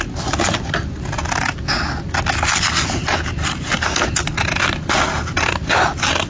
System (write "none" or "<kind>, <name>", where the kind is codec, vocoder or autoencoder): none